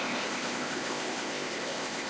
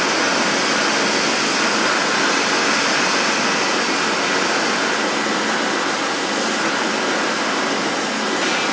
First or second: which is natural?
second